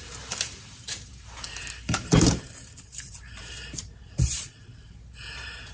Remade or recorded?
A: remade